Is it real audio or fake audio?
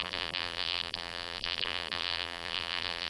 fake